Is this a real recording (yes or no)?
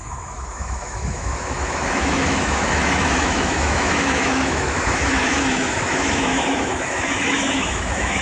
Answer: no